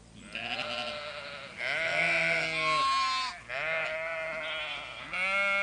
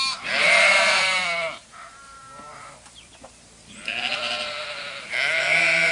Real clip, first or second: first